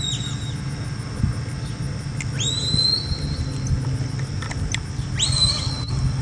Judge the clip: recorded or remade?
recorded